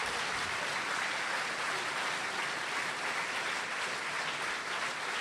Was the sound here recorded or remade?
recorded